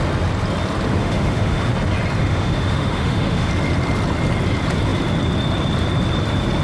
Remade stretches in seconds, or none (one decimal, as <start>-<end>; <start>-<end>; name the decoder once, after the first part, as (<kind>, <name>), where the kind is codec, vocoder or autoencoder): 1.0-1.7 (autoencoder, DAC-VAE); 2.2-3.5